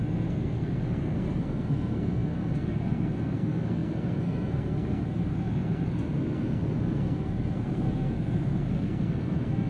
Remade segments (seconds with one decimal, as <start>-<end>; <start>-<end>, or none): 0.0-9.7